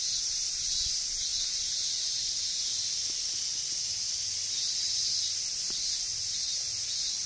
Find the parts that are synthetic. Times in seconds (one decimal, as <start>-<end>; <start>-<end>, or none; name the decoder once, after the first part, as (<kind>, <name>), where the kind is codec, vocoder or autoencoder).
1.3-2.1 (vocoder, BigVGAN v2)